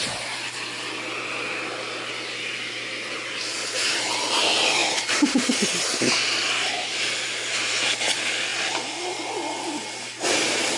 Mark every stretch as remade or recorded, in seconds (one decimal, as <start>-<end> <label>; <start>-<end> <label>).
0.0-4.8 recorded; 4.8-7.0 remade; 7.0-10.8 recorded